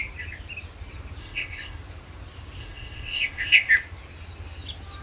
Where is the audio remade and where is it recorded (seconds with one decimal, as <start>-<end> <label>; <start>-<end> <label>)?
0.0-1.2 recorded; 1.2-1.8 remade; 1.8-2.6 recorded; 2.6-3.7 remade; 3.7-5.0 recorded